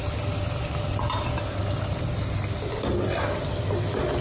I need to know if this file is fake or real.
real